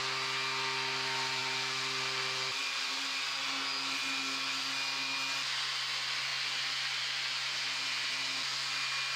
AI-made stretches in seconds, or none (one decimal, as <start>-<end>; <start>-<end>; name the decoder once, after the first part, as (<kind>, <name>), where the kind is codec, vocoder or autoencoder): 1.4-3.4 (vocoder, BigVGAN v2)